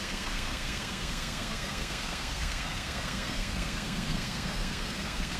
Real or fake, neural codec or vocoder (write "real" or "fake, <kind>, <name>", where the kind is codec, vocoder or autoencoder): fake, codec, SNAC